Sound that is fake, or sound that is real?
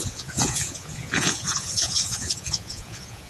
fake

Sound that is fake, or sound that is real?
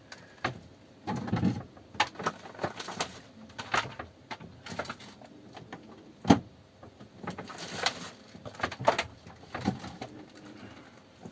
real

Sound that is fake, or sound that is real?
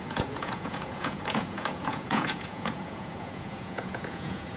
fake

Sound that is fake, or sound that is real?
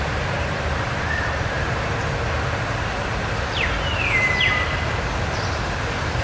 real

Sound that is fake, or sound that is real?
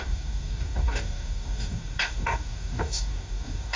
fake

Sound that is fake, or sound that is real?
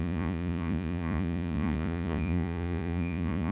fake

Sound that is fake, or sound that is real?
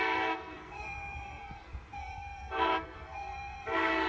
fake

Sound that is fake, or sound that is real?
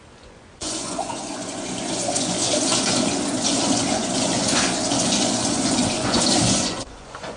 fake